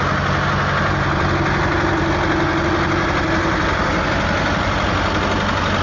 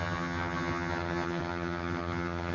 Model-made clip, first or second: second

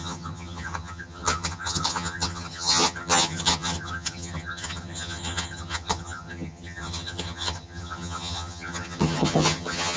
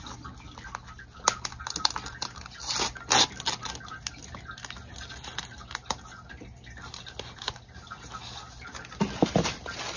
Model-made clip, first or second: first